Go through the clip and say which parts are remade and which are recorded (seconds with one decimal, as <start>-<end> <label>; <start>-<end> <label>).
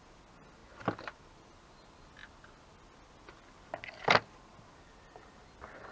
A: 0.0-5.9 recorded